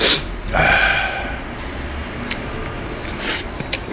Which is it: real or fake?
real